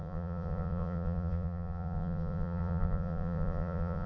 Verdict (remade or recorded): remade